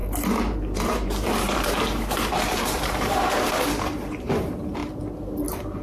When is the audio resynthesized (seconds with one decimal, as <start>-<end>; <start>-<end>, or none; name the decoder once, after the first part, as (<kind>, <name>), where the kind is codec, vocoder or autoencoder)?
0.0-4.8 (vocoder, BigVGAN v2)